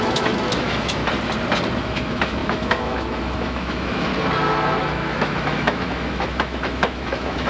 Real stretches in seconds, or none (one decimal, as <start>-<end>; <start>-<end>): 1.0-1.8; 4.1-4.8